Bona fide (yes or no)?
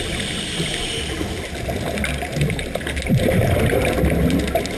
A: yes